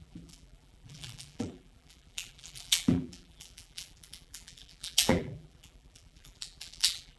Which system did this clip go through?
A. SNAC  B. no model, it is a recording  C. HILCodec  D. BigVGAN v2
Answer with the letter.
D